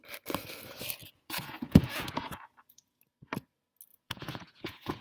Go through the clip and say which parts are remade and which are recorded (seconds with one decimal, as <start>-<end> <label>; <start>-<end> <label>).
0.0-1.0 recorded; 1.0-3.0 remade; 3.0-3.9 recorded; 3.9-5.0 remade